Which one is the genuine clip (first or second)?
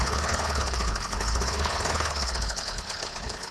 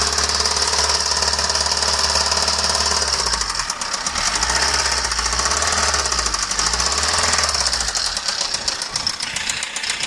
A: second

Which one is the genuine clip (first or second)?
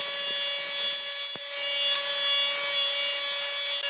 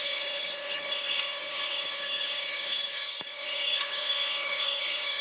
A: first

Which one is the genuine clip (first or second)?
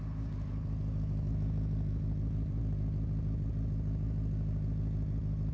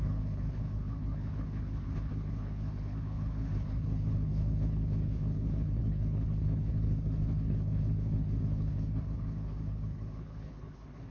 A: first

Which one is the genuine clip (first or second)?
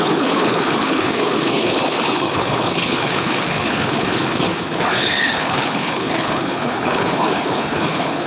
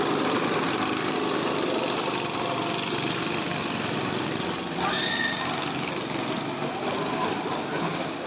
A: second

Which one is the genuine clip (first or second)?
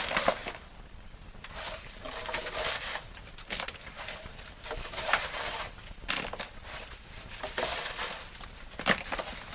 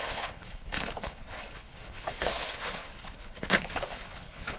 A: first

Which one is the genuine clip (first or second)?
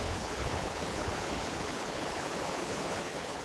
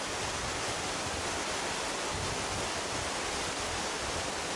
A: second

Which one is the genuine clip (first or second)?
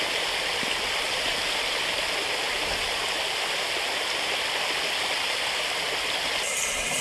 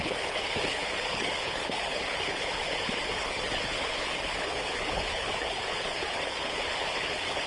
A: first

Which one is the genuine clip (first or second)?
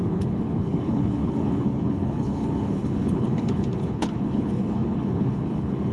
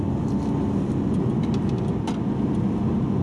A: second